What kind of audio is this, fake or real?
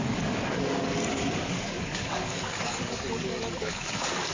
fake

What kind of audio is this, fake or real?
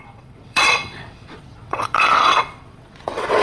fake